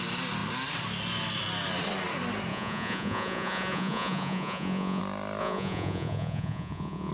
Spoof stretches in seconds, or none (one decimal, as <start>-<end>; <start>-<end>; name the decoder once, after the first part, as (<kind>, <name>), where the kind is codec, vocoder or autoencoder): 2.5-5.0 (vocoder, Vocos); 5.4-7.1